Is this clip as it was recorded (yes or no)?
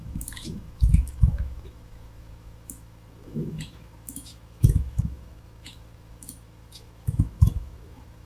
no